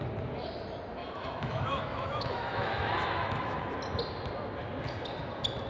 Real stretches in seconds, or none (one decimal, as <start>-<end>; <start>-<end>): 0.0-1.0; 3.7-5.7